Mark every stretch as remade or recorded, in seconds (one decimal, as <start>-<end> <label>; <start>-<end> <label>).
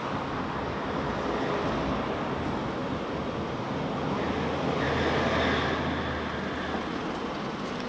0.0-7.9 recorded